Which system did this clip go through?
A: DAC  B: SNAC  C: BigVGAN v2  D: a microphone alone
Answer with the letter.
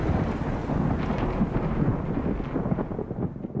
D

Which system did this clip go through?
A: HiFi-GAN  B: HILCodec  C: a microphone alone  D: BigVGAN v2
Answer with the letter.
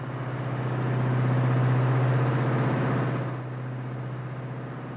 C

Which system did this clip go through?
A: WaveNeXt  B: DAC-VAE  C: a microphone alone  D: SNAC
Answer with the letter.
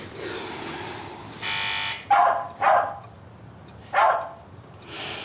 C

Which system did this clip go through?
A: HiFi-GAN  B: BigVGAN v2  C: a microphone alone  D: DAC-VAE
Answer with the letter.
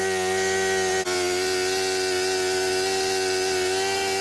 C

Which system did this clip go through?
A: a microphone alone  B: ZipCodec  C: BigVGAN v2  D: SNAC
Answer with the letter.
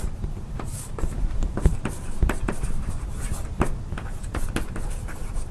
C